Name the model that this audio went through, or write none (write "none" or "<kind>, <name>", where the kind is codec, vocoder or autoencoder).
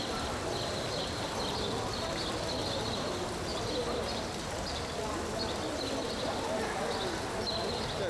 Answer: none